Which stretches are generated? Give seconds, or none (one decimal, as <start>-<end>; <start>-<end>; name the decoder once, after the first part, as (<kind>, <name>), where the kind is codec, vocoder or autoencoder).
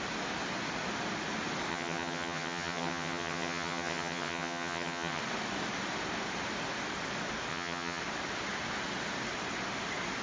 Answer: 1.7-5.2 (vocoder, HiFi-GAN); 7.5-8.0